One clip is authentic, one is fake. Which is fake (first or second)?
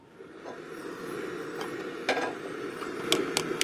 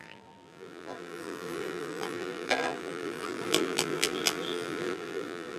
second